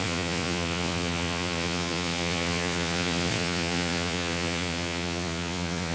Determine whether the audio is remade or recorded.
remade